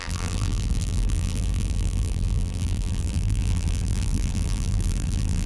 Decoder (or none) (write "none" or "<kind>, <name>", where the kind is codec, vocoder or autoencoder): vocoder, BigVGAN v2